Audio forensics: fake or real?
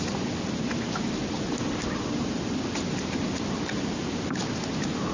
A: real